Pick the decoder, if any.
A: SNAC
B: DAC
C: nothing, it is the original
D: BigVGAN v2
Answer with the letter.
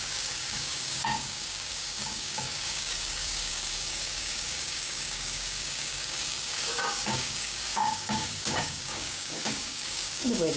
B